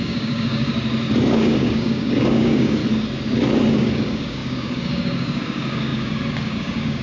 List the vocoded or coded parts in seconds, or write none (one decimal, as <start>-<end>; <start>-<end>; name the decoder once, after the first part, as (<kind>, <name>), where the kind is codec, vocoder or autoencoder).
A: 0.0-0.7 (codec, DAC); 1.3-2.8; 3.7-7.0